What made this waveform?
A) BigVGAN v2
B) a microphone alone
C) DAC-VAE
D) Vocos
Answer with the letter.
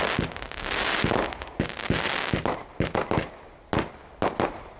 B